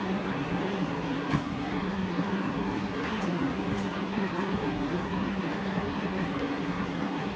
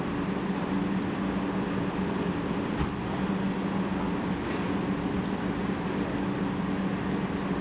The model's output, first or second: first